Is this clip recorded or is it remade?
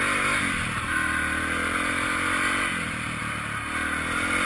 recorded